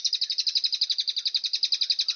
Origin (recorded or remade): recorded